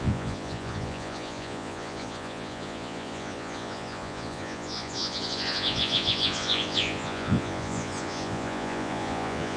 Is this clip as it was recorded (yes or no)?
no